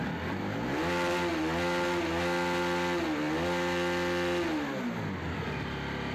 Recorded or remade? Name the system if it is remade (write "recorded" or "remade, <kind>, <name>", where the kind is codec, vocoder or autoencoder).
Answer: recorded